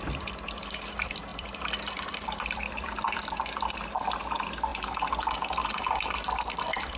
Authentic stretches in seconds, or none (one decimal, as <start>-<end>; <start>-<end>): 4.7-6.4